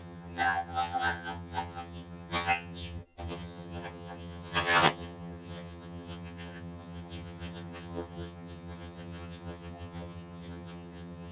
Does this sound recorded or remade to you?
remade